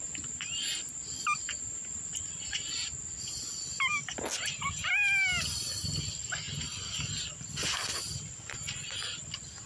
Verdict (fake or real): real